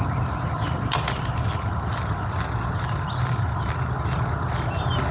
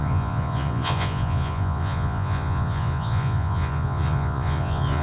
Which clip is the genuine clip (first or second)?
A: first